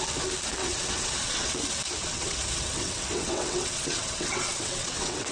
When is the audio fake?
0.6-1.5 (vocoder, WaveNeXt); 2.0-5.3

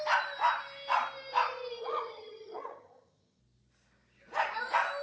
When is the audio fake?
1.8-3.4 (vocoder, HiFi-GAN)

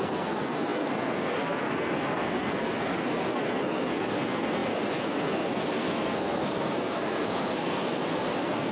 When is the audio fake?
0.0-8.7 (codec, SNAC)

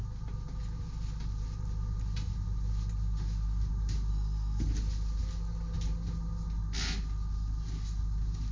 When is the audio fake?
4.1-4.7 (codec, SNAC)